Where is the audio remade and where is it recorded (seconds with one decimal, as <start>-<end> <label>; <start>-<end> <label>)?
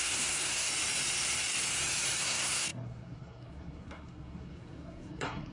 0.0-0.7 remade; 0.7-2.2 recorded; 2.2-5.5 remade